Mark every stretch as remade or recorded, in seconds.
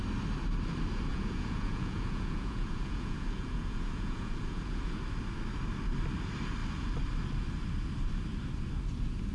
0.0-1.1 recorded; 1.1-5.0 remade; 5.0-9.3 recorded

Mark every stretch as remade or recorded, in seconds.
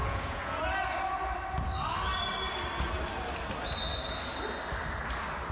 0.0-0.7 remade; 0.7-5.5 recorded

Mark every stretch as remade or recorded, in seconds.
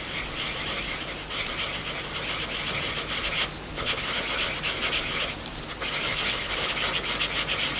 0.0-3.7 recorded; 3.7-4.2 remade; 4.2-6.1 recorded; 6.1-6.7 remade; 6.7-7.8 recorded